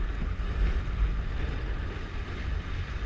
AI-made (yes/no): no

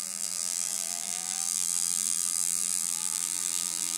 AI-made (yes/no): yes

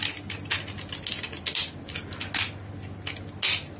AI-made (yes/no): no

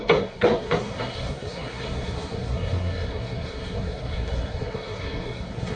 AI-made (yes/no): yes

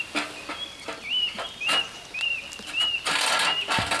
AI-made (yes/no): no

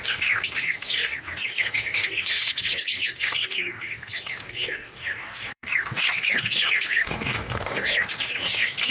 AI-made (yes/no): yes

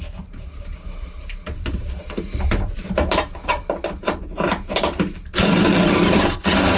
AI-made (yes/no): yes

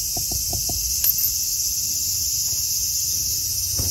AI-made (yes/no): no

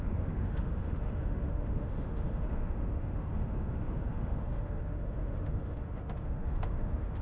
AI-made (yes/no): yes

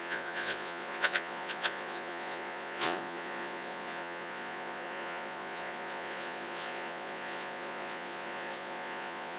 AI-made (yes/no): yes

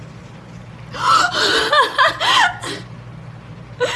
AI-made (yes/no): no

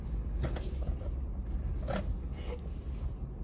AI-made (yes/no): no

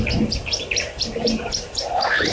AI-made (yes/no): no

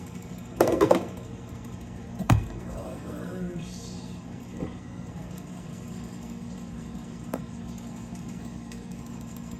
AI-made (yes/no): yes